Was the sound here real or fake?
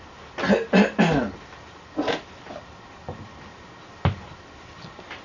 real